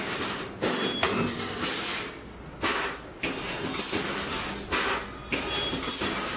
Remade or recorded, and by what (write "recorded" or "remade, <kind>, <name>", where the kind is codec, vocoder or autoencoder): recorded